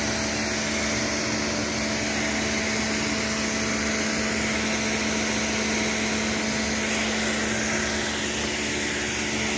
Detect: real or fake real